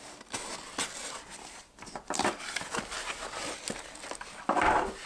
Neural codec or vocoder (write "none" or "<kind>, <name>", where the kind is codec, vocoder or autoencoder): none